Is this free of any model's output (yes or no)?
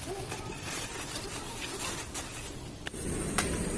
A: no